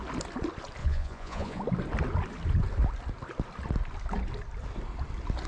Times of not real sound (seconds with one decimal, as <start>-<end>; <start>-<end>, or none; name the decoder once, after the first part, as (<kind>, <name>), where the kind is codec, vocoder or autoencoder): 0.8-1.6 (vocoder, Vocos)